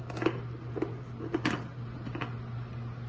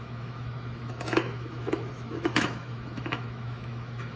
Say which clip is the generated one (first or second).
second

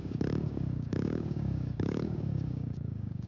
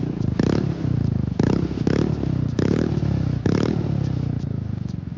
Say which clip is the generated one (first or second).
first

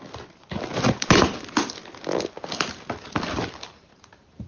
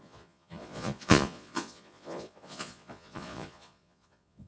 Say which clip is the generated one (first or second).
second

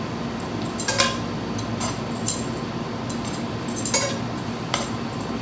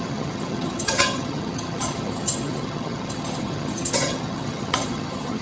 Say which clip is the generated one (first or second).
second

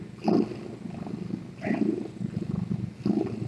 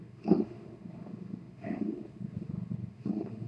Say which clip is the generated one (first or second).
second